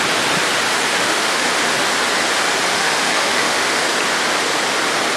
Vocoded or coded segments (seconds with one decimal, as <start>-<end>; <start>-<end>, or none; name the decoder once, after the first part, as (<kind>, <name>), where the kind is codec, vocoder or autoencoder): 0.9-1.5 (autoencoder, DAC-VAE); 2.7-3.9